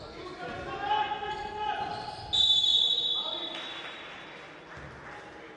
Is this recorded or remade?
recorded